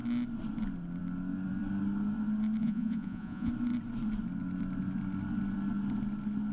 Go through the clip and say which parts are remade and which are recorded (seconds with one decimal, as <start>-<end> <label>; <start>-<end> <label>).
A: 0.0-2.6 recorded; 2.6-3.5 remade; 3.5-6.5 recorded